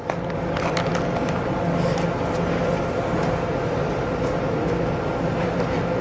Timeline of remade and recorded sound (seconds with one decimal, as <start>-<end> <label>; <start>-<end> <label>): 0.0-6.0 recorded